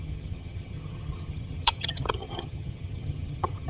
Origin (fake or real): fake